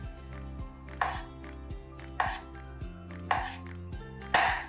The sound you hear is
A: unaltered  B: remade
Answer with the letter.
A